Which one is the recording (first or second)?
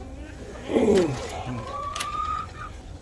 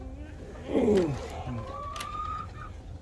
second